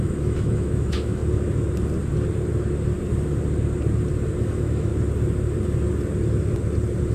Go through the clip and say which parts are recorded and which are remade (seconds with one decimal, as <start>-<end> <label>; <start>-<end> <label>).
0.0-1.2 remade; 1.2-4.4 recorded; 4.4-4.9 remade; 4.9-7.1 recorded